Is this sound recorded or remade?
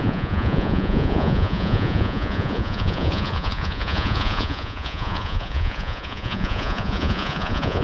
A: remade